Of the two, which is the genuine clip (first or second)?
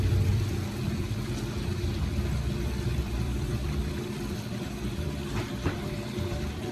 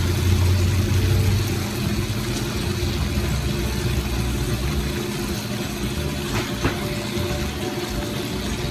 second